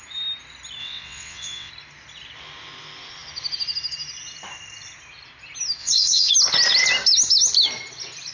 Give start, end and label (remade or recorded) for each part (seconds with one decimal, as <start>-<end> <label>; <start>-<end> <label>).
0.0-0.8 recorded; 0.8-1.7 remade; 1.7-5.8 recorded; 5.8-6.3 remade; 6.3-8.3 recorded